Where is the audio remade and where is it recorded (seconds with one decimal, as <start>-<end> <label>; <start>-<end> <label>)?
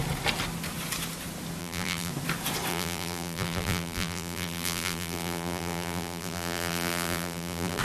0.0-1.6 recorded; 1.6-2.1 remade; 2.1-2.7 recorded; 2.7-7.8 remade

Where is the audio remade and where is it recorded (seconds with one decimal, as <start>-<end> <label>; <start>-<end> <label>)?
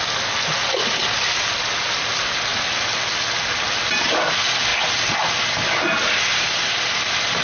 0.0-7.4 recorded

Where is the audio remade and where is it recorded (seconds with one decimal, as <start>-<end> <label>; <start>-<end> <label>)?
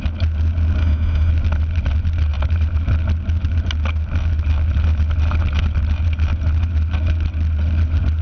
0.0-0.8 recorded; 0.8-1.3 remade; 1.3-8.2 recorded